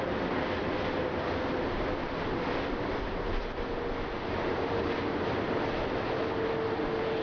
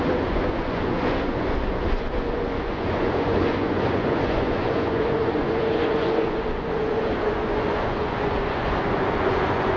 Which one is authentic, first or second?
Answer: first